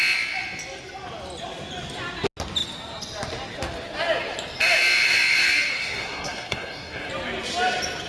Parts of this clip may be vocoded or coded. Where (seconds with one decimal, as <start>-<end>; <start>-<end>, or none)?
5.7-7.1